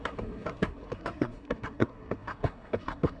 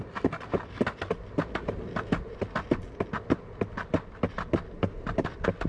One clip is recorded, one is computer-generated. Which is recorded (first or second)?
second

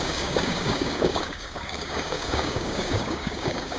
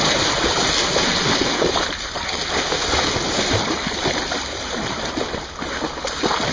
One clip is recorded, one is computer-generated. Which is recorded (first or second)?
second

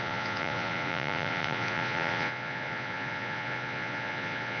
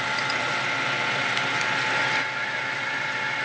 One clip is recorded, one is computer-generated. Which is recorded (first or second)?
second